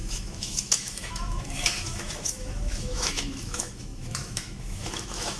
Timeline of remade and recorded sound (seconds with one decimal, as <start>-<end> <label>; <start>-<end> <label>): 0.0-5.4 remade